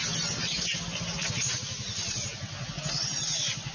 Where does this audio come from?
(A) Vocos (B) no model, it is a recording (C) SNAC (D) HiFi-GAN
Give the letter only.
B